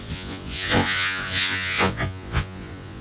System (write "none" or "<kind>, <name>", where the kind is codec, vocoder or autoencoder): vocoder, Vocos